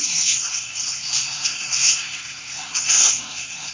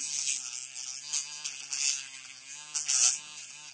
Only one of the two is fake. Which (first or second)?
first